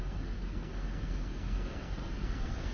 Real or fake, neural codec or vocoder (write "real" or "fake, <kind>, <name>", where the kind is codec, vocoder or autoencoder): fake, codec, SNAC